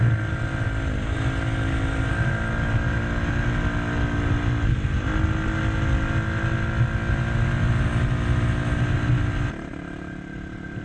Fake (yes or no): no